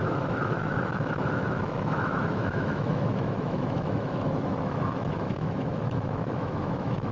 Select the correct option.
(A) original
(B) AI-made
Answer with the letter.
B